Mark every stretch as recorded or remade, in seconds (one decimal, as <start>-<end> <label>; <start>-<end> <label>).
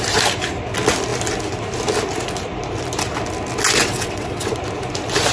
0.0-3.8 recorded; 3.8-4.5 remade; 4.5-5.3 recorded